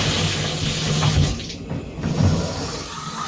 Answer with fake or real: real